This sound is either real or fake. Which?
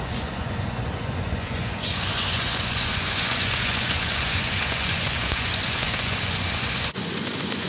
fake